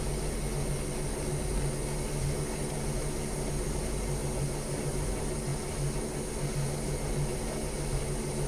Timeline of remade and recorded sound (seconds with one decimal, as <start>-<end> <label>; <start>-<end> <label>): 0.0-8.5 recorded